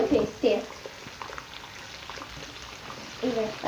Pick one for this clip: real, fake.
real